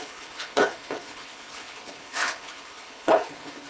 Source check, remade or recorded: remade